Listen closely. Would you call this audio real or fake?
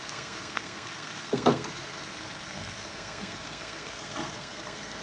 fake